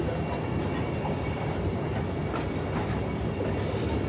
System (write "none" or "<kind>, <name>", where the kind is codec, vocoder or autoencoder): none